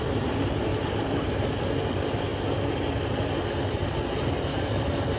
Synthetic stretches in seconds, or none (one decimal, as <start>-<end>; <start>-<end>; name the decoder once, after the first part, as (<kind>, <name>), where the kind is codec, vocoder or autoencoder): 0.7-1.5 (vocoder, BigVGAN v2); 4.5-5.2

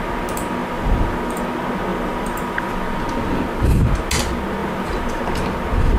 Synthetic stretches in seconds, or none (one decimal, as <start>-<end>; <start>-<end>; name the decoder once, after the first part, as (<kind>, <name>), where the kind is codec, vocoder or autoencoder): 0.6-1.4 (vocoder, BigVGAN v2); 1.9-3.0; 4.6-5.2

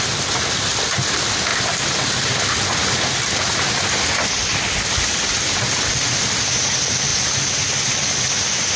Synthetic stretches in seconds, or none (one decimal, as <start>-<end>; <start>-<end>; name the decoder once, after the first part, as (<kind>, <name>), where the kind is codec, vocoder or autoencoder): none

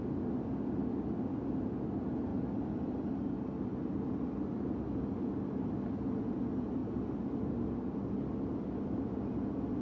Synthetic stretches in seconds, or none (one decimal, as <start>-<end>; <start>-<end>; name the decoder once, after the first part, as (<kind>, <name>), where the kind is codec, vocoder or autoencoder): none

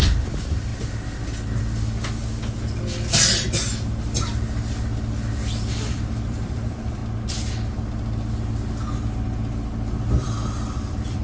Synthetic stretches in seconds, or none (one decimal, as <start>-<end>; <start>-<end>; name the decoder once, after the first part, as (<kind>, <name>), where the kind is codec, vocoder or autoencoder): 0.0-0.7 (vocoder, BigVGAN v2); 3.1-3.7; 5.9-7.0; 10.6-11.2